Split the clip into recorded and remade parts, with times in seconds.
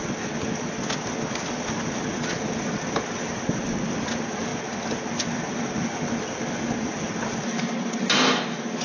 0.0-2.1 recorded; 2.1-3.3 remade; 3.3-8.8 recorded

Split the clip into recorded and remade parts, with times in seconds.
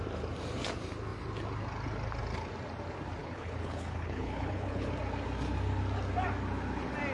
0.0-3.2 recorded; 3.2-4.9 remade; 4.9-7.1 recorded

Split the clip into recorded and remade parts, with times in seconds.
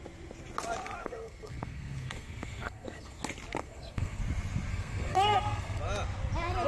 0.0-1.0 recorded; 1.0-3.2 remade; 3.2-3.6 recorded; 3.6-4.2 remade; 4.2-4.7 recorded; 4.7-5.8 remade; 5.8-6.7 recorded